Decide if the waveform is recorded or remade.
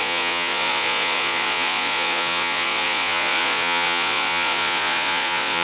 remade